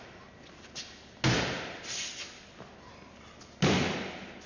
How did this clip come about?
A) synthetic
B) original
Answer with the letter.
B